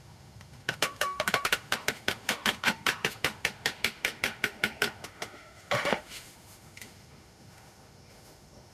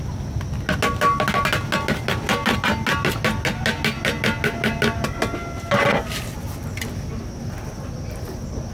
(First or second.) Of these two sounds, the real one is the second